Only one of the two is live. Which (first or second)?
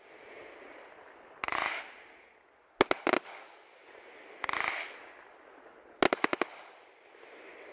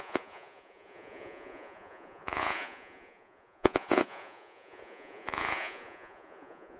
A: first